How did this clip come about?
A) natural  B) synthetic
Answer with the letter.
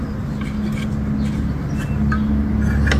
A